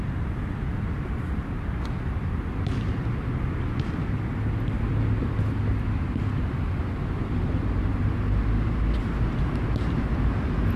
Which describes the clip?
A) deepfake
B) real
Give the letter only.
B